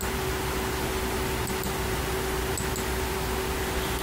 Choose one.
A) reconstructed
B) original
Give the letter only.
B